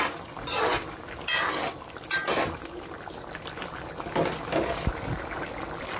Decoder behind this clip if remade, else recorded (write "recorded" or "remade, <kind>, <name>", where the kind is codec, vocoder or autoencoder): recorded